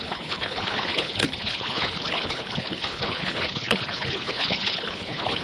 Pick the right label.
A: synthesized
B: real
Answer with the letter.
A